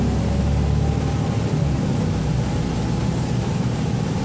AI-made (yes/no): no